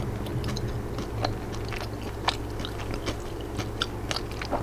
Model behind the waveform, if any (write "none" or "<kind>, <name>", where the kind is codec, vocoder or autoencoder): none